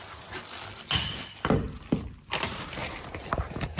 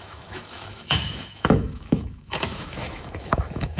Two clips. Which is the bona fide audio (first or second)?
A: first